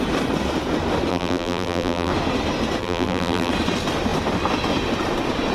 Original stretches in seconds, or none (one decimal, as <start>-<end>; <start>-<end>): 0.0-1.1; 2.1-2.8; 3.5-5.5